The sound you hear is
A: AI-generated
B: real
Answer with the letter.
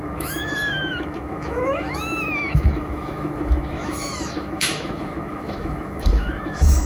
A